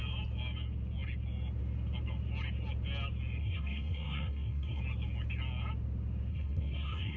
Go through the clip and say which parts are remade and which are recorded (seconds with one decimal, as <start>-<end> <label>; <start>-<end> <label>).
0.0-3.4 recorded; 3.4-4.8 remade; 4.8-6.3 recorded; 6.3-7.2 remade